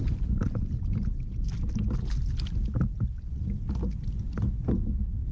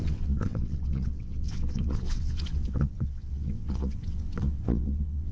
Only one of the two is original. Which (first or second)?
first